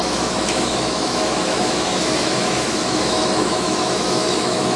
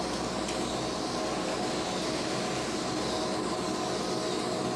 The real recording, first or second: second